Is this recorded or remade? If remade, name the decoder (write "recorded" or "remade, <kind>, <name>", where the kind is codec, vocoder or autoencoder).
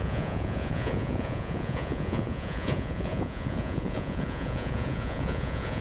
remade, vocoder, Vocos